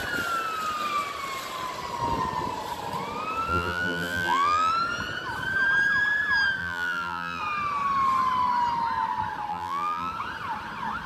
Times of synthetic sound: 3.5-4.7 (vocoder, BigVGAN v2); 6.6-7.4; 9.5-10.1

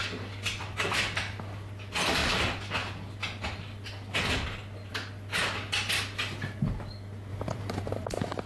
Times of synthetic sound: 7.3-8.1 (vocoder, BigVGAN v2)

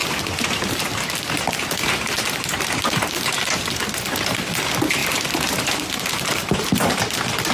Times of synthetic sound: 5.0-6.8 (vocoder, BigVGAN v2)

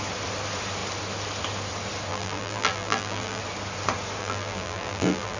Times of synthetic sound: 2.1-3.4 (vocoder, BigVGAN v2); 4.2-5.4

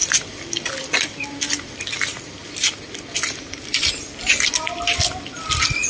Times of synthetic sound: 0.0-1.7 (vocoder, BigVGAN v2)

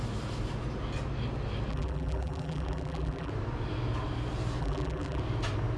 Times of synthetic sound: 1.7-3.3 (vocoder, BigVGAN v2); 4.6-5.2